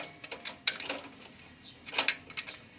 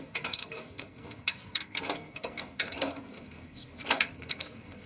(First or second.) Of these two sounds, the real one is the first